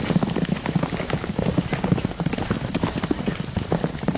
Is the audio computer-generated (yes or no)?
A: no